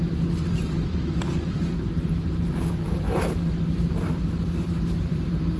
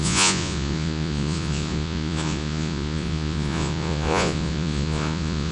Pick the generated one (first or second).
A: second